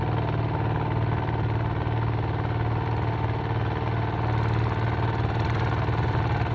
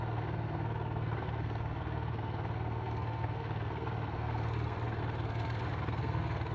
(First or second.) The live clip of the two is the first